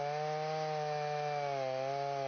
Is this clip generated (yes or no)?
no